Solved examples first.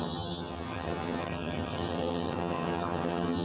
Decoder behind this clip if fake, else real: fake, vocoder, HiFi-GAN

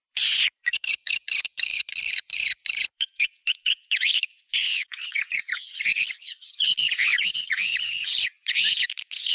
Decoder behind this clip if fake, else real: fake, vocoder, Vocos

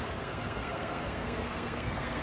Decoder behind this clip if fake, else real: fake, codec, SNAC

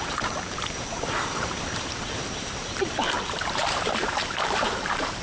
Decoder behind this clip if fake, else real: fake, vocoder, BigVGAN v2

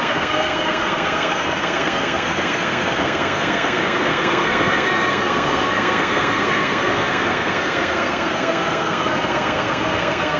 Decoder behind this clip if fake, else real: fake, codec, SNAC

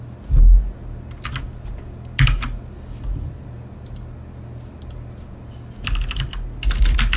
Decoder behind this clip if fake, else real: real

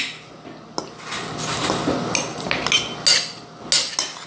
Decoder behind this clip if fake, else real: real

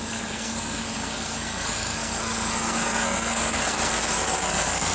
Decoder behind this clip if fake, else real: fake, codec, SNAC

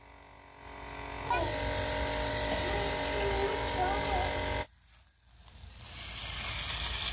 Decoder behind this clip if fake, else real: real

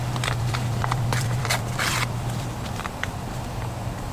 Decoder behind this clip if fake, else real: fake, vocoder, BigVGAN v2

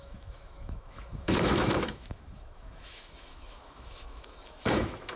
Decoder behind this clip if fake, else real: fake, autoencoder, DAC-VAE